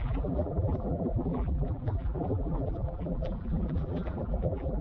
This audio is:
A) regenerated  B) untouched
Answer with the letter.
A